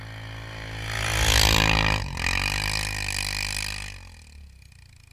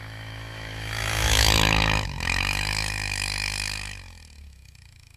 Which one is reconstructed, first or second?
second